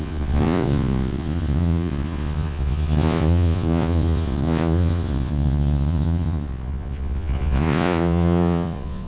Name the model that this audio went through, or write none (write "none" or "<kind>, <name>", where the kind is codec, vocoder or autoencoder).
vocoder, Vocos